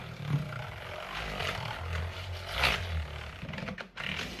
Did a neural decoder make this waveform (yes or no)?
no